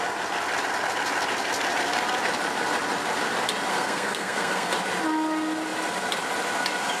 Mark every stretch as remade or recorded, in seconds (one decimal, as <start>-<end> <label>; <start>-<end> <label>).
0.0-3.7 recorded; 3.7-4.7 remade; 4.7-7.0 recorded